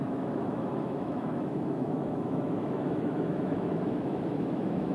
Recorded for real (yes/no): no